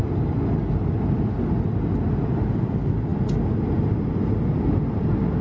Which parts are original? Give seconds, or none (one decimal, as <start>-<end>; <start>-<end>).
0.0-5.4